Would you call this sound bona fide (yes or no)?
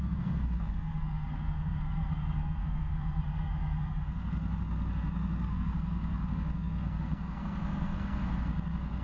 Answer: no